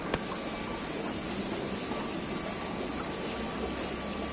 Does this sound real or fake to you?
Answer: real